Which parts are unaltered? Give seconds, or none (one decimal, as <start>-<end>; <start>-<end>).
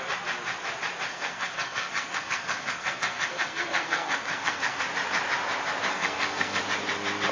0.0-1.1; 4.8-5.9; 6.6-7.3